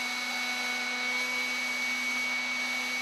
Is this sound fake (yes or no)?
no